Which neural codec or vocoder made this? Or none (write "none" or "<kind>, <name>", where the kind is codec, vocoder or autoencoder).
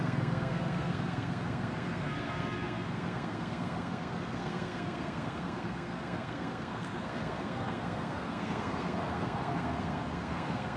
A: codec, SNAC